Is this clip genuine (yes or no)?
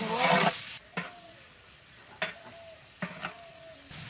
yes